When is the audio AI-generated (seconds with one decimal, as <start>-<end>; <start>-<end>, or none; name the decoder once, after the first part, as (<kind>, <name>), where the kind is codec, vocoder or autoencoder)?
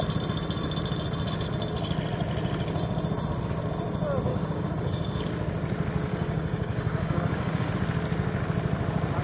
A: 4.3-5.2 (codec, DAC); 6.1-7.7